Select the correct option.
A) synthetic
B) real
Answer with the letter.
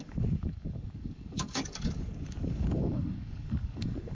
A